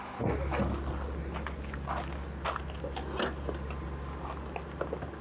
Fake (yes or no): no